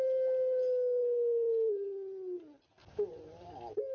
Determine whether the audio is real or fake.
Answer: real